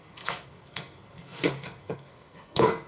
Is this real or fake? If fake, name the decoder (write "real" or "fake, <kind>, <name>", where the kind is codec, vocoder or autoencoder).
fake, codec, SNAC